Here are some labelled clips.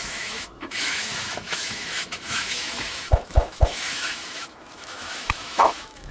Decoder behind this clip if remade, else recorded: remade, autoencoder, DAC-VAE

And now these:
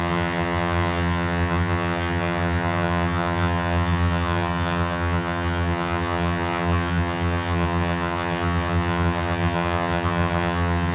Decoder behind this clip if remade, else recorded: remade, vocoder, HiFi-GAN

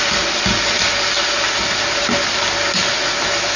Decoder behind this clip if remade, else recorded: recorded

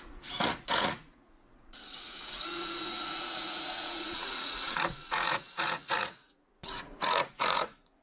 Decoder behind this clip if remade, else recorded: remade, vocoder, Vocos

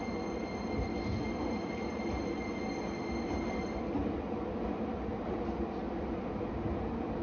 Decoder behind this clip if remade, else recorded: recorded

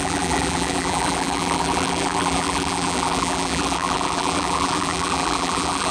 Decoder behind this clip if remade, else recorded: remade, vocoder, BigVGAN v2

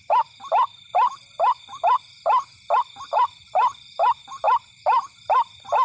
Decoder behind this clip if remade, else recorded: remade, vocoder, BigVGAN v2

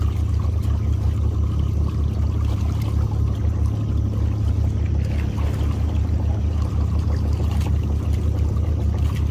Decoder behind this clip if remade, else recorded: recorded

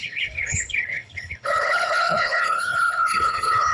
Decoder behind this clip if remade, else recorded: remade, codec, HILCodec